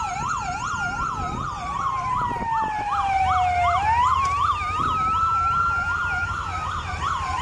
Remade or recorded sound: recorded